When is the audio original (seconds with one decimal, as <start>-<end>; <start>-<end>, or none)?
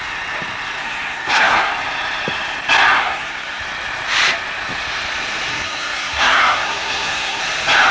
0.0-0.8; 1.7-3.0; 3.6-5.5; 7.4-7.9